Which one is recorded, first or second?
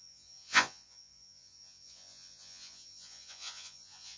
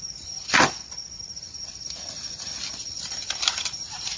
second